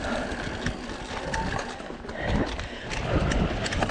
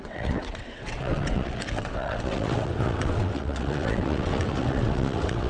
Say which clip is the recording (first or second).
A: first